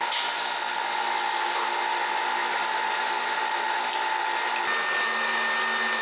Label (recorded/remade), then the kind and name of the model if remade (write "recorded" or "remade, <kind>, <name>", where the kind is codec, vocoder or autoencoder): recorded